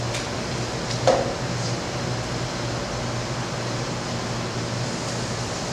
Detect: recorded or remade recorded